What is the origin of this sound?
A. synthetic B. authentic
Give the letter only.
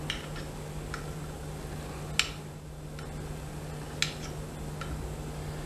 B